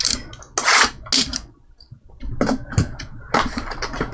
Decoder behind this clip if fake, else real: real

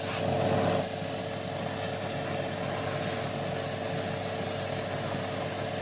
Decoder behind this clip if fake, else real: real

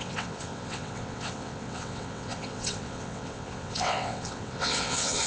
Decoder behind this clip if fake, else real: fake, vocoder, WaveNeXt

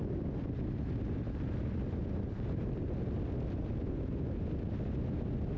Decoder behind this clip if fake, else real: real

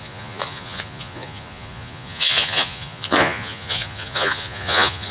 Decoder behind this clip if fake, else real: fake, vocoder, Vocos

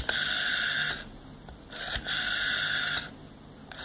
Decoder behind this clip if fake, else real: real